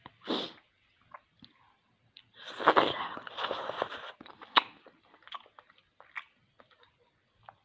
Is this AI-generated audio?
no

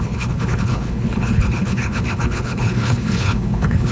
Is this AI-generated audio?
yes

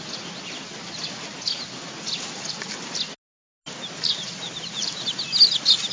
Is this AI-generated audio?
no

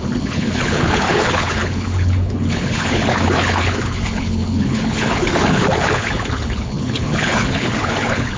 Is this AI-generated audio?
yes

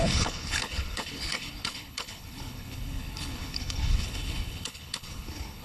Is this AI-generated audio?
yes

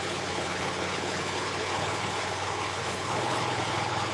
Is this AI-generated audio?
yes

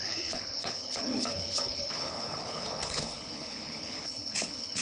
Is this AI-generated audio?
yes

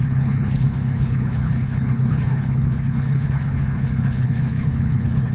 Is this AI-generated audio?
yes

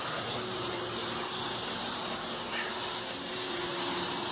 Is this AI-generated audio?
no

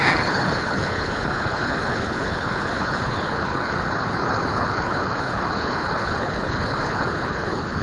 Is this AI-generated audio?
yes